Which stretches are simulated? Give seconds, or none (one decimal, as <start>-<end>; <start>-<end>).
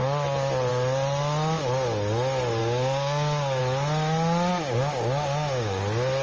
2.6-3.6; 4.5-5.8